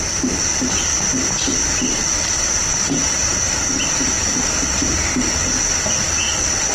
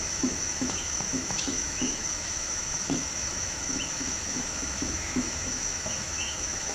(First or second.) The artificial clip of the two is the second